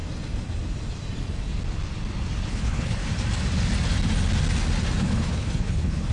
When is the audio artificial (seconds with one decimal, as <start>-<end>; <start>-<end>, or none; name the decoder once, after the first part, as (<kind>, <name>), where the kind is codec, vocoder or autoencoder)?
2.5-3.0 (codec, HILCodec); 5.0-6.1